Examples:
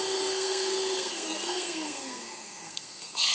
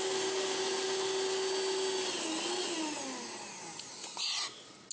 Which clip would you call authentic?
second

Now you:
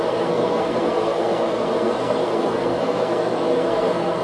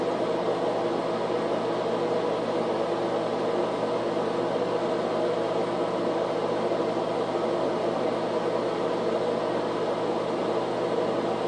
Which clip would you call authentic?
second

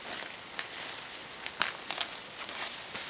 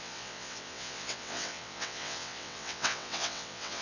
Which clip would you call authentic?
first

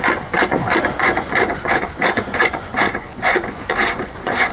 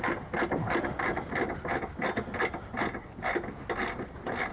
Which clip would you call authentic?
second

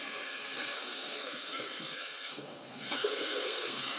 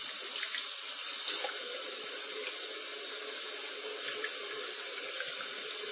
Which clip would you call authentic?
second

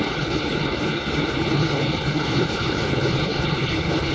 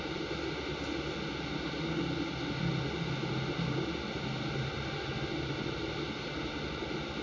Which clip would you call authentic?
second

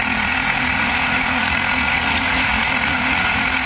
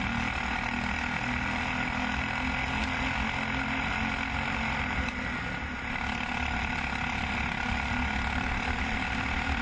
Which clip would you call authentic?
second